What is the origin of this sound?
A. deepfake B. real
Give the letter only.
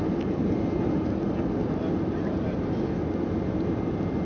B